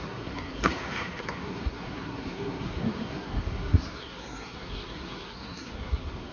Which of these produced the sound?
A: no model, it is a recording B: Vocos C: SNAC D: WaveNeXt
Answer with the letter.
C